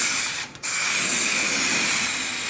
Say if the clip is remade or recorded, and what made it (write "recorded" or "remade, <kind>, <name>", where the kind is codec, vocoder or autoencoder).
recorded